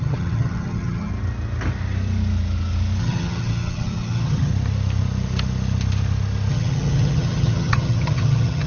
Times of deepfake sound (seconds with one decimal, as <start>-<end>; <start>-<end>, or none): 0.0-1.1; 3.0-4.5; 6.5-8.7